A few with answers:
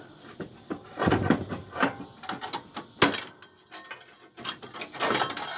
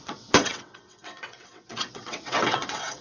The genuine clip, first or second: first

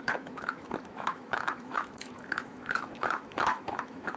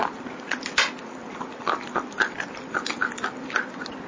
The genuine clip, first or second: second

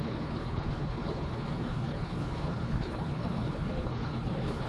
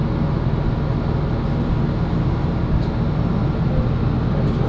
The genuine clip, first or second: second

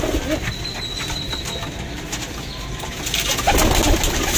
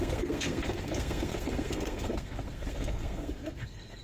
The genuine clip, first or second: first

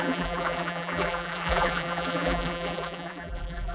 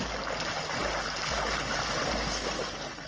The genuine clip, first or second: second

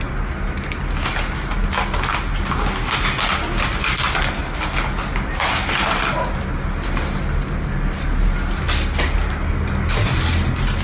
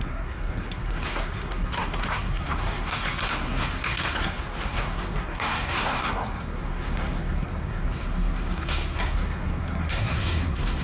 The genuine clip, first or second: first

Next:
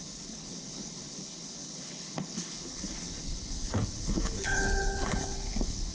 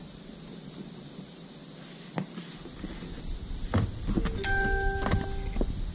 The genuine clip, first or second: second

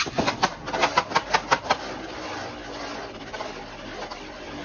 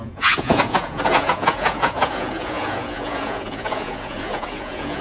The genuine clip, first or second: first